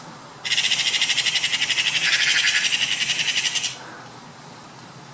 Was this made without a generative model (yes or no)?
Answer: yes